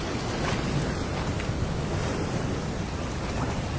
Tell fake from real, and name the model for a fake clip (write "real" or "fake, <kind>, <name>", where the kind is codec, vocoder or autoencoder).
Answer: real